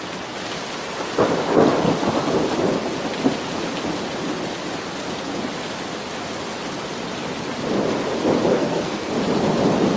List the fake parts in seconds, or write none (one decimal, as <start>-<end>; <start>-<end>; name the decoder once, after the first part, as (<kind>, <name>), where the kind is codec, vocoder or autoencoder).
8.5-9.1 (codec, SNAC)